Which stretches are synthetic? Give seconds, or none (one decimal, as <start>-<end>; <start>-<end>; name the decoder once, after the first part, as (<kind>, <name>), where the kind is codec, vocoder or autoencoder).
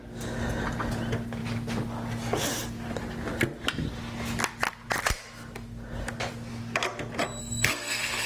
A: 7.4-8.3 (codec, SNAC)